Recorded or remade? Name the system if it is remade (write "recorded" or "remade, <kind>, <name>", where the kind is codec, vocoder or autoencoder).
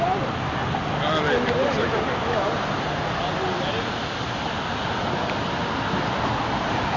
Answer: recorded